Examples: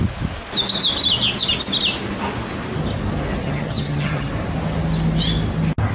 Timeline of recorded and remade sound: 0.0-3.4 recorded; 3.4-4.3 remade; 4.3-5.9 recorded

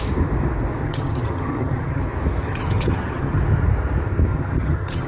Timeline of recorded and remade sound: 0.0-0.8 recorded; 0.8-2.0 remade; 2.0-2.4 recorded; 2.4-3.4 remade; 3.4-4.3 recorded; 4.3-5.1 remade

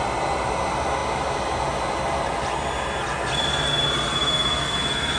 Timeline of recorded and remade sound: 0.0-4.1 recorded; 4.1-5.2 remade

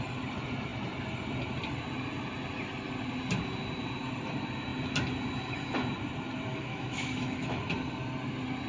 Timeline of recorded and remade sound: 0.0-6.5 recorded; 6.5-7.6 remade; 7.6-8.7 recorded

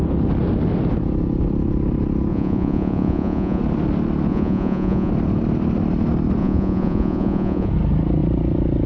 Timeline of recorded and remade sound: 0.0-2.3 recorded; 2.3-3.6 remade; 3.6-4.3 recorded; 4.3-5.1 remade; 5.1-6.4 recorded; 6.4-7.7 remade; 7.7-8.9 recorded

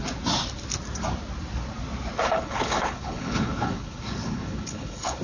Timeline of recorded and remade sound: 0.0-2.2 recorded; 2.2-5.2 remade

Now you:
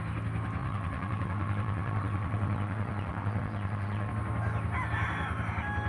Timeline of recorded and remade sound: 0.0-0.6 recorded; 0.6-4.1 remade; 4.1-5.9 recorded

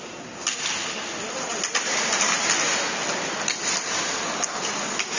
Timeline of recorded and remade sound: 0.0-5.2 recorded